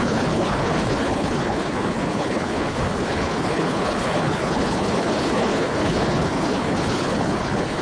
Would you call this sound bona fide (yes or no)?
no